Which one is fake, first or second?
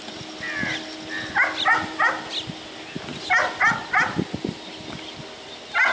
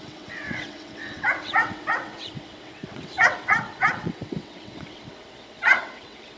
second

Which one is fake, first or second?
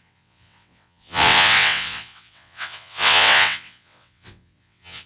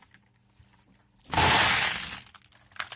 first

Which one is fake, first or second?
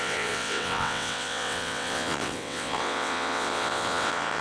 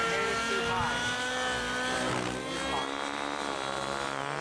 first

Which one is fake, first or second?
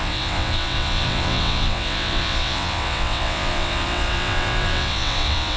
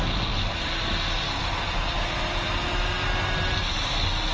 first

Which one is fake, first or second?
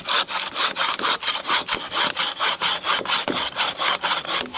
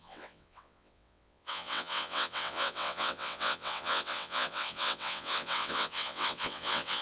second